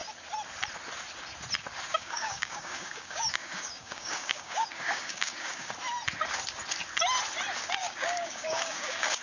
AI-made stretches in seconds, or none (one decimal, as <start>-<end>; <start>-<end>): 1.9-5.7; 7.8-9.2